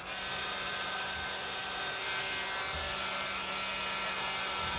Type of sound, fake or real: real